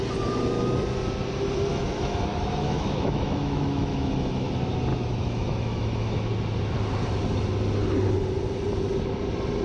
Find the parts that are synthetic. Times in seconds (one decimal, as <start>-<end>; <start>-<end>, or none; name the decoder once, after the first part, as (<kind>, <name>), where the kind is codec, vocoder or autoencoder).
1.7-4.5 (autoencoder, DAC-VAE); 4.9-6.3